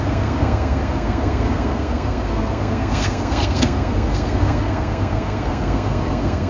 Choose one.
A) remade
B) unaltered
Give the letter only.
A